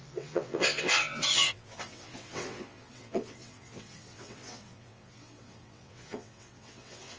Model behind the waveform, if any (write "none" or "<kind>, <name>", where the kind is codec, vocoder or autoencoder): vocoder, WaveNeXt